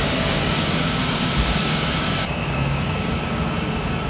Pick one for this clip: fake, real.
fake